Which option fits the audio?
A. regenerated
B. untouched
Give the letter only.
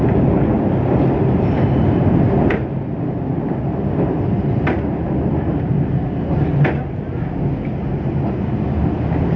B